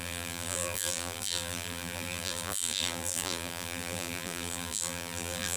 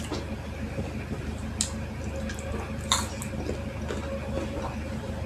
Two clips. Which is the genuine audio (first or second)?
second